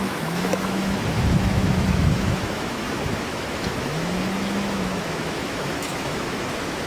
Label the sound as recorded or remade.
remade